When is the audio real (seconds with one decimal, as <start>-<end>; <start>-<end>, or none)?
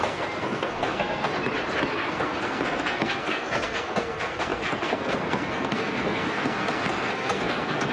1.3-1.9